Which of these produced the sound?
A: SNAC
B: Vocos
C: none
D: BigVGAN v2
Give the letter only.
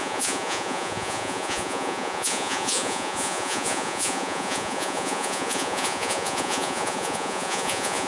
B